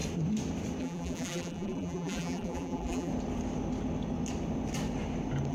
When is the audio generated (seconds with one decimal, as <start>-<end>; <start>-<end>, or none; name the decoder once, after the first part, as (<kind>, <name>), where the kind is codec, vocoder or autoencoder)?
0.8-3.1 (vocoder, BigVGAN v2)